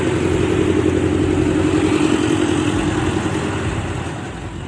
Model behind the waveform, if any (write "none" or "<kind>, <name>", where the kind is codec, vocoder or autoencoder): none